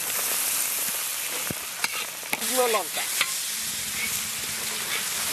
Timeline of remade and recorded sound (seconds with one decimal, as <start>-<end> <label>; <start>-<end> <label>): 0.0-1.1 recorded; 1.1-4.0 remade; 4.0-5.3 recorded